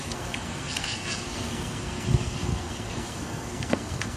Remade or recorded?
remade